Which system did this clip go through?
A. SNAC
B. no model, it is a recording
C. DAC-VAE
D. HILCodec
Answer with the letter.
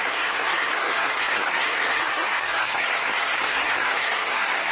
A